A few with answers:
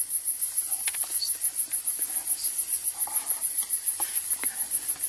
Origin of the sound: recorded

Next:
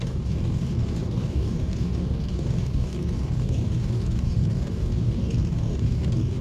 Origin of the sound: remade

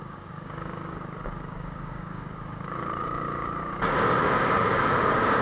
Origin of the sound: remade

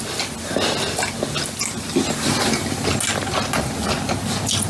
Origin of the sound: recorded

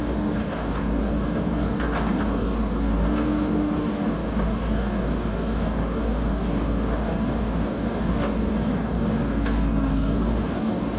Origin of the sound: remade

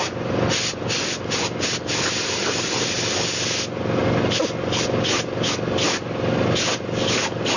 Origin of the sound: recorded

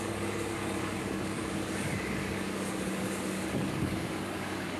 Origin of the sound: remade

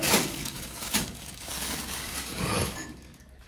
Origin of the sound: remade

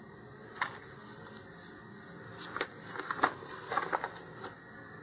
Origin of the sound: recorded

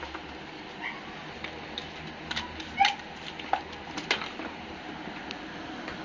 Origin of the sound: recorded